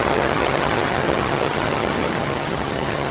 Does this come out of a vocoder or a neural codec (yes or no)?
yes